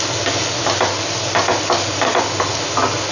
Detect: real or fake real